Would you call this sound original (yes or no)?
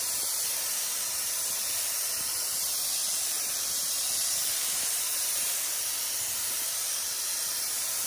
no